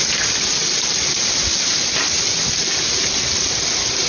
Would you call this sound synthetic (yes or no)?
no